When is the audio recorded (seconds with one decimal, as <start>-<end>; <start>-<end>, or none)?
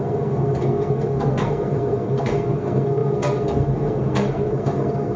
none